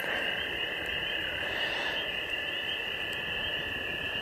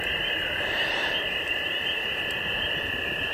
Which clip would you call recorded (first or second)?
first